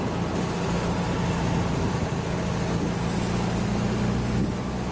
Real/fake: real